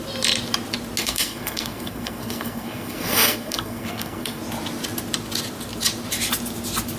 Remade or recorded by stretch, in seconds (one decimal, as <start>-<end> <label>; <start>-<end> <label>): 0.0-1.0 recorded; 1.0-4.4 remade; 4.4-7.0 recorded